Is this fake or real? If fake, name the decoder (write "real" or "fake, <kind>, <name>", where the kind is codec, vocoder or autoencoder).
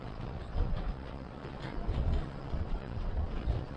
fake, vocoder, WaveNeXt